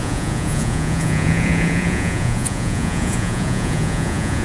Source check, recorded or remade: remade